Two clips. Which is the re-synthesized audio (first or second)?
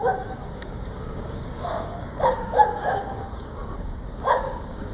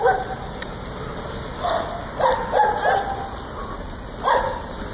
first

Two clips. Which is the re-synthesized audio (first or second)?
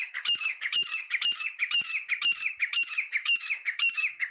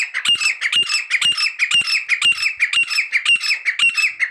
first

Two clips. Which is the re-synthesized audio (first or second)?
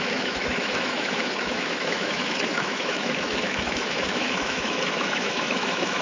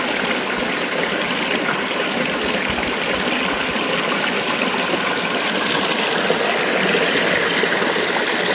first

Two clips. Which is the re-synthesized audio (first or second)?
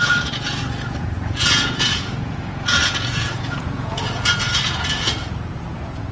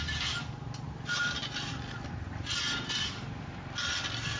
first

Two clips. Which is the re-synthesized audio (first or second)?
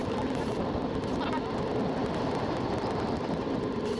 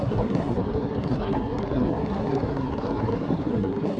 second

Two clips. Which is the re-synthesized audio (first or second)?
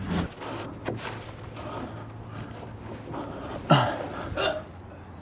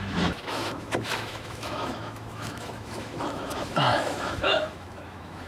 second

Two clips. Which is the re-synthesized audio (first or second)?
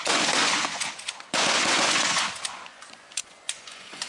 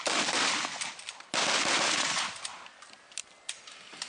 first